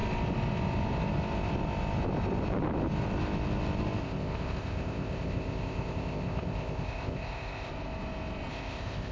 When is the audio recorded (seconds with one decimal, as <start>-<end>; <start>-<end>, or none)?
0.0-4.0; 7.7-8.5